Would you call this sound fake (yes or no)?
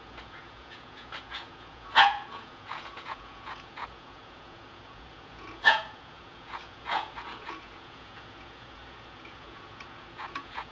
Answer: yes